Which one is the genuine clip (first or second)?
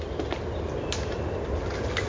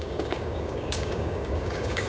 first